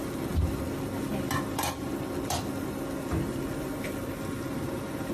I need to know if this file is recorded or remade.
recorded